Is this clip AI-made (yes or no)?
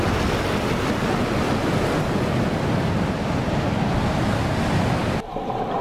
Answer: no